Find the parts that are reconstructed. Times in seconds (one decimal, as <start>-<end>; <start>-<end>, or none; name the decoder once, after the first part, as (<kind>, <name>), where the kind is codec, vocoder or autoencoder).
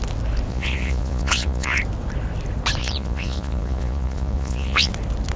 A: 0.5-1.8 (vocoder, Vocos); 2.8-4.9